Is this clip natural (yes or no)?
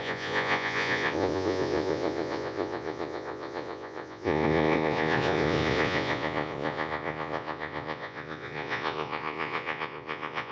no